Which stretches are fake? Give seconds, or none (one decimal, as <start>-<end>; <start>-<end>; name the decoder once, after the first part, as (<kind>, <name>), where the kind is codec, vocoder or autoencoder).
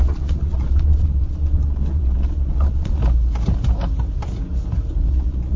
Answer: 0.0-3.0 (vocoder, Vocos); 5.1-5.6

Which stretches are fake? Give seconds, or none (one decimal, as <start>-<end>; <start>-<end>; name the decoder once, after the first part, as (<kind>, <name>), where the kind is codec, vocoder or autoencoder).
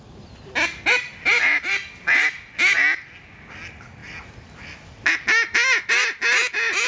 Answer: none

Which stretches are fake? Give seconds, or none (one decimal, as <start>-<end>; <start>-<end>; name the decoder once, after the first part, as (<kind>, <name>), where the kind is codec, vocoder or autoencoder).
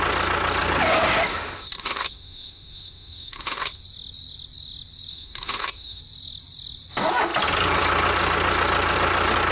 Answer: 1.3-3.8 (autoencoder, DAC-VAE); 5.1-6.0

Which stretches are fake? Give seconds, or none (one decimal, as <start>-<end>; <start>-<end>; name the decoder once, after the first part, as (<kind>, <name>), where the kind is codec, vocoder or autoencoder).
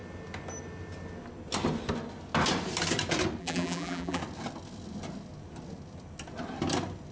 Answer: 3.4-4.2 (vocoder, BigVGAN v2)